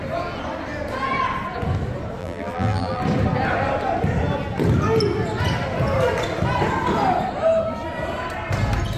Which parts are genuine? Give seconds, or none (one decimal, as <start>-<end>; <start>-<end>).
0.0-2.2; 3.0-9.0